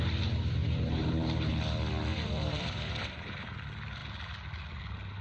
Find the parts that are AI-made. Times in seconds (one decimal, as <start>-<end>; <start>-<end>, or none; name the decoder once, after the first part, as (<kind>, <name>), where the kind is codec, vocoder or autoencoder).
0.6-1.5 (vocoder, BigVGAN v2); 2.1-3.5